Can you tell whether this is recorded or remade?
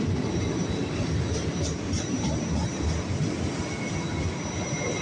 recorded